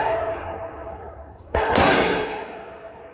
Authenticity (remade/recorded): remade